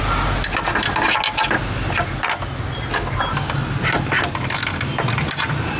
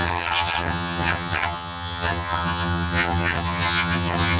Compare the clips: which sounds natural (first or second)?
first